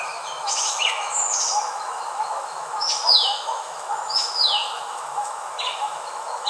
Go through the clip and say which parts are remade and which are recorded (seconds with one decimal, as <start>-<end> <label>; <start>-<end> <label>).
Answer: 0.0-6.5 remade